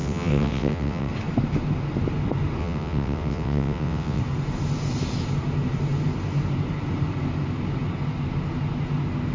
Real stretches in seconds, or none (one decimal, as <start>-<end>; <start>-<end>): 1.1-2.6; 4.2-9.3